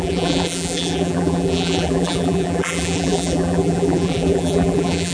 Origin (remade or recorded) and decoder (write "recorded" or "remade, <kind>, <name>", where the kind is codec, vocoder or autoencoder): remade, vocoder, BigVGAN v2